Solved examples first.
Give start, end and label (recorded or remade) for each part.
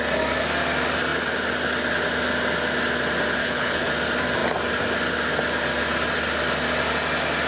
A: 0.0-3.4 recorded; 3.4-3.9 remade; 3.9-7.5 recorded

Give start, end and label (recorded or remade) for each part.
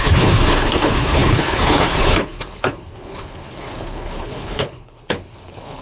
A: 0.0-5.8 remade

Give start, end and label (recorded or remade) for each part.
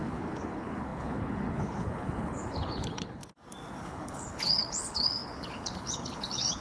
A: 0.0-3.2 remade; 3.2-3.8 recorded; 3.8-6.6 remade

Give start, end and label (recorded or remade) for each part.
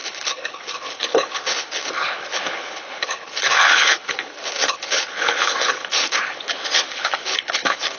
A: 0.0-8.0 remade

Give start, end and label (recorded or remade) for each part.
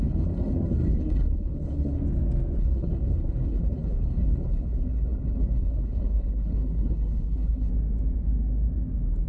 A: 0.0-2.0 remade; 2.0-2.6 recorded; 2.6-7.7 remade; 7.7-9.3 recorded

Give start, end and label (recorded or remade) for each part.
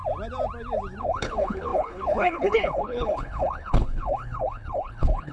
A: 0.0-1.0 recorded; 1.0-5.3 remade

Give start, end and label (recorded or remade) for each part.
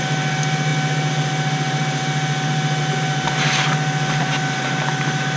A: 0.0-5.4 recorded